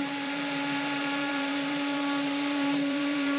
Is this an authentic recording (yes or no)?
no